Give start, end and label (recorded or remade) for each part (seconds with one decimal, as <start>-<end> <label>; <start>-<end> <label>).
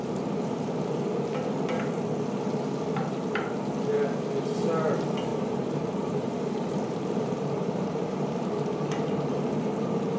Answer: 0.0-5.3 recorded; 5.3-10.2 remade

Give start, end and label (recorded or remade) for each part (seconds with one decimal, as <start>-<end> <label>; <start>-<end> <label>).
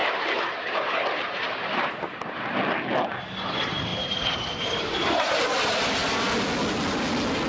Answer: 0.0-2.4 remade; 2.4-3.9 recorded; 3.9-5.4 remade; 5.4-7.5 recorded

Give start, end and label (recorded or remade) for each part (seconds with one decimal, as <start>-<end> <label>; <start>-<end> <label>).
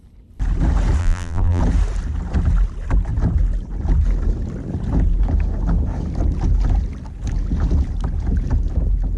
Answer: 0.0-1.0 recorded; 1.0-1.6 remade; 1.6-9.2 recorded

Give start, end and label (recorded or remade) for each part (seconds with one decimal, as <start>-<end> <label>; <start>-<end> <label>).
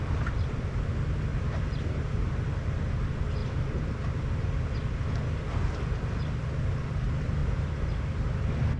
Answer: 0.0-1.3 recorded; 1.3-2.5 remade; 2.5-3.4 recorded; 3.4-4.4 remade; 4.4-7.4 recorded; 7.4-8.0 remade; 8.0-8.8 recorded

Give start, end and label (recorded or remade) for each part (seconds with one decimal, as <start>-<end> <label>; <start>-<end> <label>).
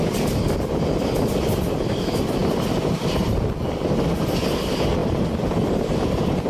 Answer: 0.0-5.0 recorded; 5.0-6.1 remade; 6.1-6.5 recorded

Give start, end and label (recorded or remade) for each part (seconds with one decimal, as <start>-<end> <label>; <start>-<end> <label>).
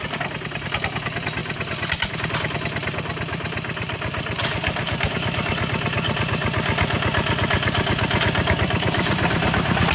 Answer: 0.0-6.4 remade; 6.4-8.6 recorded; 8.6-9.9 remade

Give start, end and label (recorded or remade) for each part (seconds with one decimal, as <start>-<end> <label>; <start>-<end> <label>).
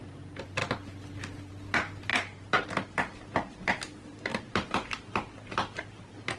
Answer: 0.0-2.1 recorded; 2.1-3.5 remade; 3.5-4.3 recorded; 4.3-5.1 remade; 5.1-6.4 recorded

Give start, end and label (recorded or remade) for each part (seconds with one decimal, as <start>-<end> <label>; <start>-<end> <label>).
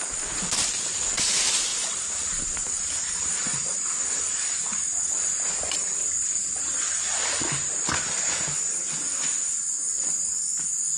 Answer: 0.0-1.7 recorded; 1.7-4.2 remade; 4.2-11.0 recorded